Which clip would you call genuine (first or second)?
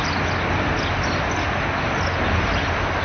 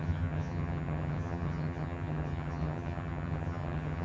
first